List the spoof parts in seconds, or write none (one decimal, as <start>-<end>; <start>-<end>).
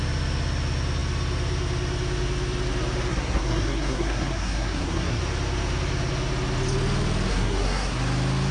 3.1-5.2; 7.3-8.0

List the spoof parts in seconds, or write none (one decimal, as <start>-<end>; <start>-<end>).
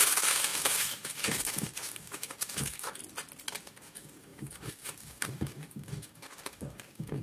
0.0-3.0; 3.6-7.2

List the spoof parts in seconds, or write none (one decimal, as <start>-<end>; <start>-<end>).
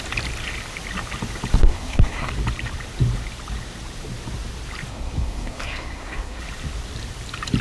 1.6-2.3; 4.9-6.4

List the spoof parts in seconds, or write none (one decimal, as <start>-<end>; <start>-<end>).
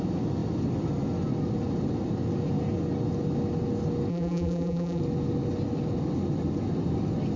4.1-5.0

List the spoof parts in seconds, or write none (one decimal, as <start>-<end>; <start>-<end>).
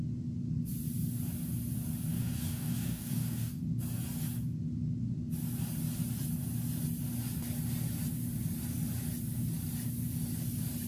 2.1-3.6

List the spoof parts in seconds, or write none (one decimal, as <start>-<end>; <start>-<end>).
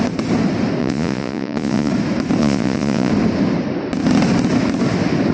0.8-1.9; 2.4-3.1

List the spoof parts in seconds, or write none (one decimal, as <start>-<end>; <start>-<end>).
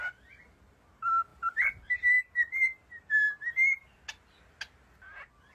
none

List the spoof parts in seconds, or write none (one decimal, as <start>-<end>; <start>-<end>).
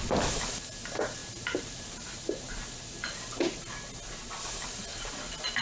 1.2-2.5